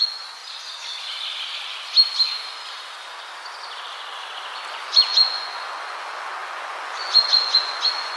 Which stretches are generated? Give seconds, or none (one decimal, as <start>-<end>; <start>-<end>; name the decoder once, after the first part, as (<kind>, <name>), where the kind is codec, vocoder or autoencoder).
0.0-0.4 (vocoder, Vocos); 4.7-8.2